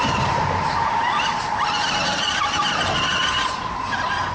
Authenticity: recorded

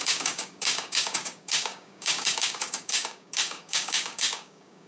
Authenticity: remade